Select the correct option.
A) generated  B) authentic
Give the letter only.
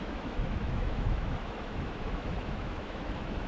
A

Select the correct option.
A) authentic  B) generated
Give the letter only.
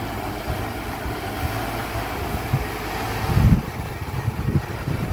A